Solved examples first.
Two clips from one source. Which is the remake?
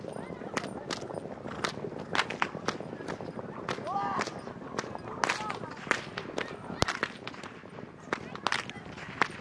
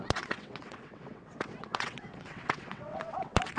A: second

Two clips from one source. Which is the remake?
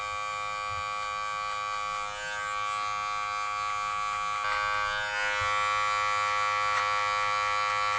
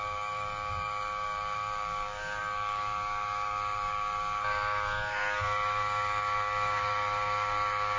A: second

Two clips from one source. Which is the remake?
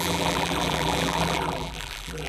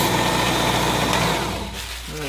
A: first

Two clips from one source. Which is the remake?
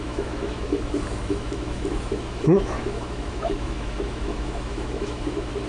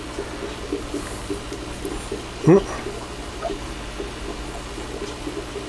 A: first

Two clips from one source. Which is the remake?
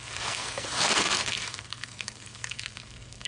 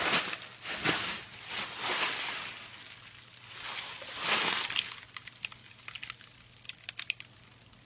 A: first